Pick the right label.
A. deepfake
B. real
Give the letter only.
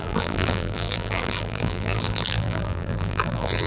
A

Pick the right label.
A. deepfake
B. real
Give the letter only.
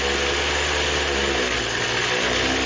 B